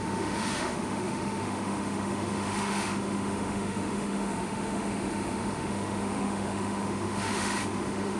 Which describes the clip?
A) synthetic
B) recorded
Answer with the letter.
A